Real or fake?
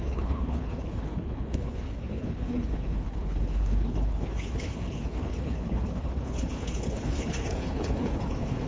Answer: fake